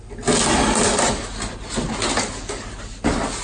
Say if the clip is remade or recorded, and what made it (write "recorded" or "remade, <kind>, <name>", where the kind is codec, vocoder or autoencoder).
recorded